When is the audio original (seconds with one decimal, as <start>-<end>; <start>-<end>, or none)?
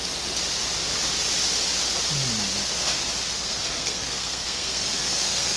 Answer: 0.0-3.4